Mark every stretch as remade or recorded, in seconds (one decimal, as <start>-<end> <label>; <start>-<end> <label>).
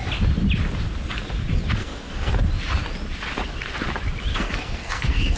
0.0-1.8 recorded; 1.8-2.3 remade; 2.3-4.3 recorded; 4.3-5.4 remade